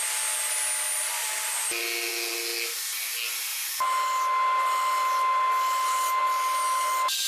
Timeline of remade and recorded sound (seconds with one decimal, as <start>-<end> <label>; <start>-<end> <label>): 0.0-7.3 recorded